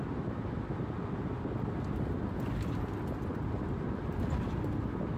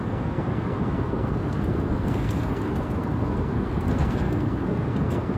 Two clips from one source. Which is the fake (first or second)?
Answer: second